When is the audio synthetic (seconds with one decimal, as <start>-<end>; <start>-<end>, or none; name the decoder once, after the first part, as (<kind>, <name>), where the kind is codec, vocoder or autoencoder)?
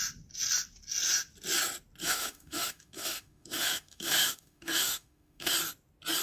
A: 2.0-5.5 (autoencoder, DAC-VAE)